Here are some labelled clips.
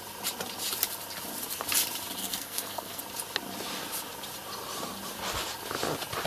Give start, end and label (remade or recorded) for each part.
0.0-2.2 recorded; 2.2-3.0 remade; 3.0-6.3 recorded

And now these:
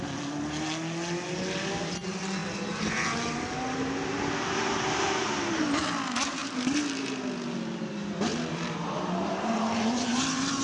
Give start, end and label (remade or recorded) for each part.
0.0-8.3 recorded; 8.3-10.6 remade

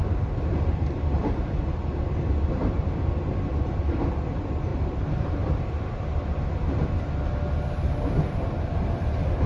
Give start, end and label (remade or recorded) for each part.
0.0-4.7 recorded; 4.7-6.0 remade; 6.0-9.5 recorded

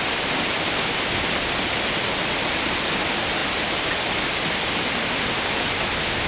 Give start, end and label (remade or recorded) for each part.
0.0-6.3 recorded

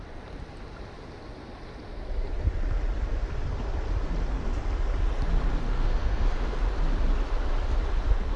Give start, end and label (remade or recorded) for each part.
0.0-5.7 recorded; 5.7-6.6 remade; 6.6-8.4 recorded

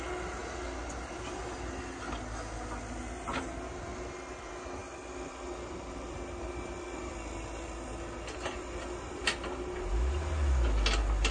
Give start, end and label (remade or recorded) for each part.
0.0-11.3 recorded

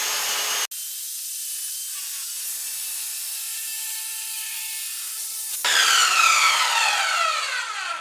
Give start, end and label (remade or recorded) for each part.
0.0-5.8 recorded; 5.8-8.0 remade

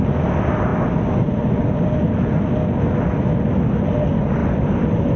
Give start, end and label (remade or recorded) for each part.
0.0-5.2 recorded